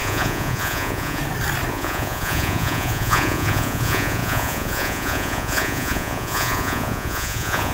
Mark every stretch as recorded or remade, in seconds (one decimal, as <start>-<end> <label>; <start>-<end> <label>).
0.0-1.2 remade; 1.2-1.7 recorded; 1.7-7.7 remade